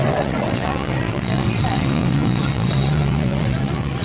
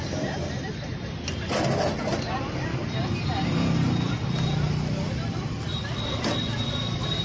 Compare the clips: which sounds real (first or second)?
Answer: second